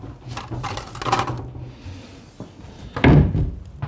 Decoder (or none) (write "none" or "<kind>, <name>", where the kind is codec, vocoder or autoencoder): none